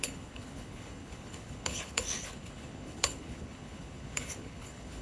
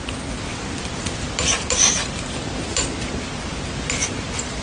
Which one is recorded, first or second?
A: second